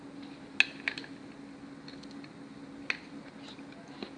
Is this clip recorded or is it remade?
recorded